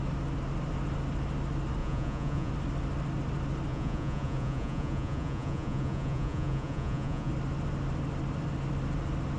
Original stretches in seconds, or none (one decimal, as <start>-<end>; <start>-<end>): 0.0-1.8; 2.5-3.7; 7.3-9.4